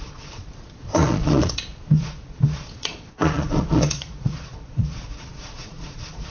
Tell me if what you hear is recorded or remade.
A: remade